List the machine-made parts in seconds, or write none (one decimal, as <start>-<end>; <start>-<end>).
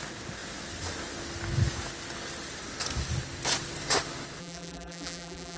4.4-5.6